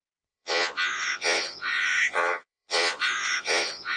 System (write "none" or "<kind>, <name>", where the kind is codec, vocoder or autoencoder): vocoder, Vocos